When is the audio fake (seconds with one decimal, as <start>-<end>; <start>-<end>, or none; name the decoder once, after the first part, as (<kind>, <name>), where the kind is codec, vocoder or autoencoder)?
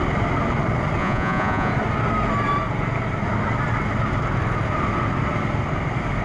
1.0-1.7 (vocoder, Vocos)